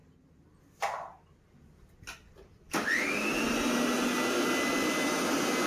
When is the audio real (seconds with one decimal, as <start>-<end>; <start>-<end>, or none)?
0.0-5.7